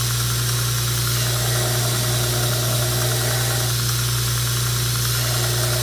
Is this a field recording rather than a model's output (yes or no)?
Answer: yes